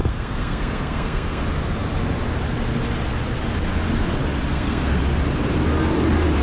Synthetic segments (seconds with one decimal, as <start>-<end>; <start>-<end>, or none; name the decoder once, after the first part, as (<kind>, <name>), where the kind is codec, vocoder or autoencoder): 0.0-1.4 (codec, SNAC); 4.5-5.0